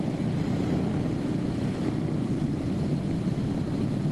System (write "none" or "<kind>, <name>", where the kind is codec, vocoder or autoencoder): none